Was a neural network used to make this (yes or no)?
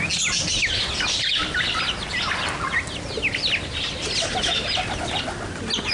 no